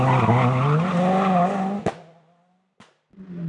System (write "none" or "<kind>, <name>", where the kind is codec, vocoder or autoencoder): none